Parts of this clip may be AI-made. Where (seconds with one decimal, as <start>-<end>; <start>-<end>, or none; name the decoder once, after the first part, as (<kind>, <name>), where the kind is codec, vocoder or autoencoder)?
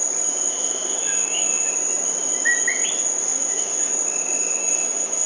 0.5-1.7 (autoencoder, DAC-VAE); 3.2-3.9; 4.6-5.3